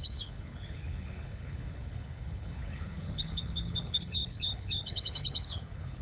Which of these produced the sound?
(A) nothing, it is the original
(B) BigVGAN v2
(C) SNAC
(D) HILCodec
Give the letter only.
D